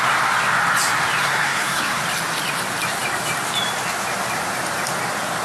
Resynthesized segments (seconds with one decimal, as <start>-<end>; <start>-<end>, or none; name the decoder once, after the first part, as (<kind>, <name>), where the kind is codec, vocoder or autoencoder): 1.2-2.0 (codec, SNAC)